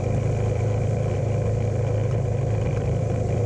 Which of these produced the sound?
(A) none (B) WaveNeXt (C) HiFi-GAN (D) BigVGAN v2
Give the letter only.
D